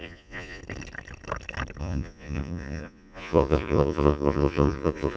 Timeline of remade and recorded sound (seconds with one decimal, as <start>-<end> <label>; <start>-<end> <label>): 0.0-0.6 remade; 0.6-1.8 recorded; 1.8-5.2 remade